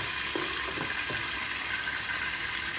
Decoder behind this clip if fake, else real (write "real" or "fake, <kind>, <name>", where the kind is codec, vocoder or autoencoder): real